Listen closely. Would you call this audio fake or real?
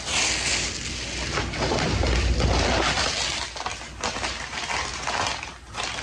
real